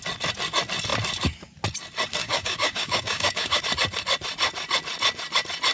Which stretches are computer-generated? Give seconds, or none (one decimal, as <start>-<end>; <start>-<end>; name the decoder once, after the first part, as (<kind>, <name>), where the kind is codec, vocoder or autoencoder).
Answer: 2.2-3.6 (codec, DAC)